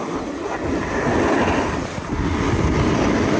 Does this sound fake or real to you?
real